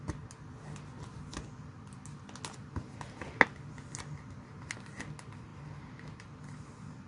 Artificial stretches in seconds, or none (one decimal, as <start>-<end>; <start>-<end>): 5.5-7.1